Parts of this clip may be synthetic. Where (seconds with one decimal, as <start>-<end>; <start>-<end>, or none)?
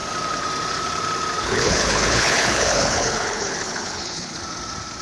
1.4-4.4